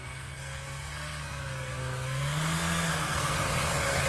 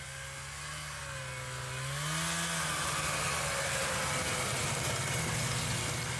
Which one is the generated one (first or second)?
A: first